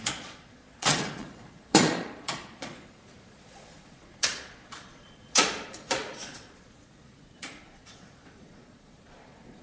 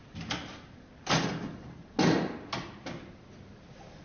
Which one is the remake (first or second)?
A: first